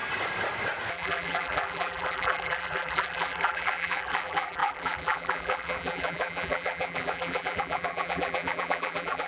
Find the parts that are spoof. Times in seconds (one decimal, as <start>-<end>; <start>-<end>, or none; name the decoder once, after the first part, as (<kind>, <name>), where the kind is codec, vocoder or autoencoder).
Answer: 0.9-9.3 (vocoder, BigVGAN v2)